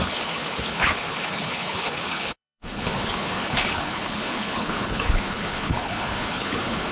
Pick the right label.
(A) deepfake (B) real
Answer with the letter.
A